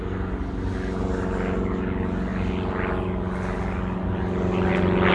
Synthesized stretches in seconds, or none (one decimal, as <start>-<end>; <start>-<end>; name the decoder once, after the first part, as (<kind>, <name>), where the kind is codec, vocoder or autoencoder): none